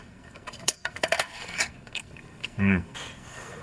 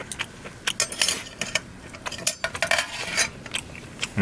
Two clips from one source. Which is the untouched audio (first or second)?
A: second